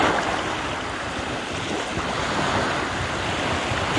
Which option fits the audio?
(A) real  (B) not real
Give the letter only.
A